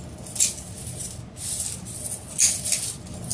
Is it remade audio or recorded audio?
recorded